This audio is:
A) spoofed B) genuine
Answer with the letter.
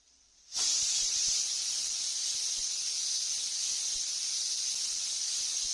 B